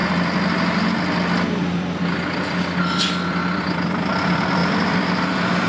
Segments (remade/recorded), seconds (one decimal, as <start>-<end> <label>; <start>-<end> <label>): 0.0-3.3 recorded; 3.3-5.7 remade